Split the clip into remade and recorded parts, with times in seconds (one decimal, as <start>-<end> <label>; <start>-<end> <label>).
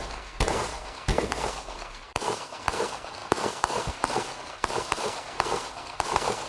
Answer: 0.0-6.5 remade